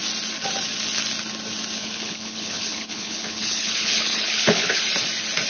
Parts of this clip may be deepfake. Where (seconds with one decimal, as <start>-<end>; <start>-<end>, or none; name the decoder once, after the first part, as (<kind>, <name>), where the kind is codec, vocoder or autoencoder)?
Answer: 1.8-4.8 (codec, HILCodec)